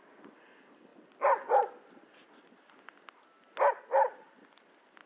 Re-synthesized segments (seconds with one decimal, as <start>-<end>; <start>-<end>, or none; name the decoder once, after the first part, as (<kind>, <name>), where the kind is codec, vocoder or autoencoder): none